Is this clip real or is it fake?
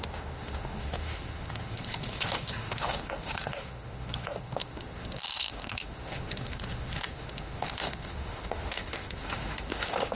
fake